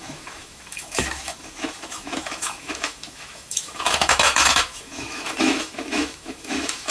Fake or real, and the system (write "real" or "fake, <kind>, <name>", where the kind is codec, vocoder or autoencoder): fake, autoencoder, DAC-VAE